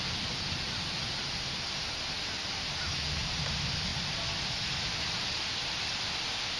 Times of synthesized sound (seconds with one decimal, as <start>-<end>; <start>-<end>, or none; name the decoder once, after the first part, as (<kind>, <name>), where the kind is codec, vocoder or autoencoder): none